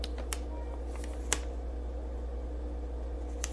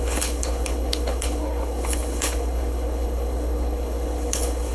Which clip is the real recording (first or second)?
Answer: first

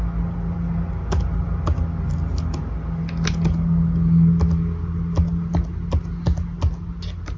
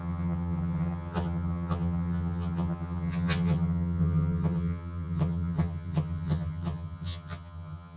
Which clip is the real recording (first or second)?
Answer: first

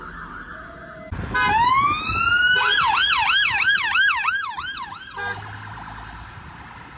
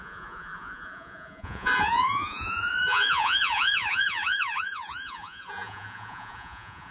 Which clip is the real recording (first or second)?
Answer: first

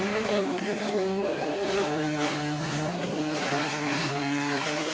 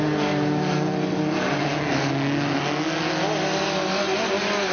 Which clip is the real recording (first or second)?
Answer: second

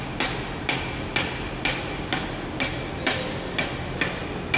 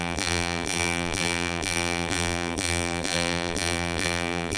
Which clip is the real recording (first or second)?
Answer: first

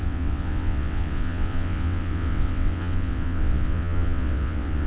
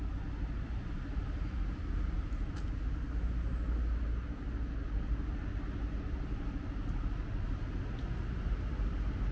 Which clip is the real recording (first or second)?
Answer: second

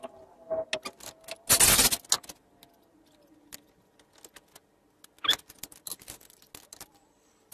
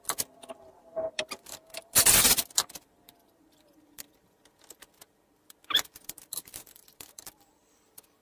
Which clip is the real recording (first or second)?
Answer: first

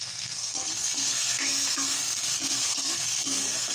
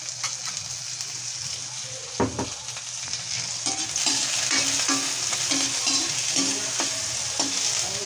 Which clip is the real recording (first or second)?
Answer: second